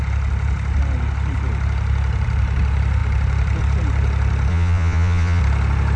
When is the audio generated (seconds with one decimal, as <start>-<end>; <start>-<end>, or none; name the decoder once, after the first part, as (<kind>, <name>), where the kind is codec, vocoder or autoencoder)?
4.5-5.4 (vocoder, Vocos)